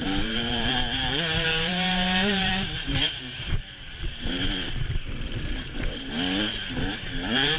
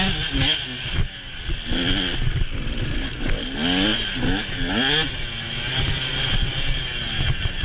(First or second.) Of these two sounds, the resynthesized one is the first